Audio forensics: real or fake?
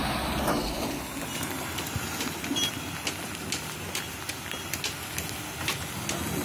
real